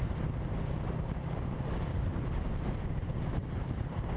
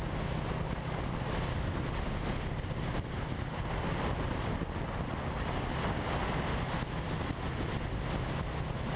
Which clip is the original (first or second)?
second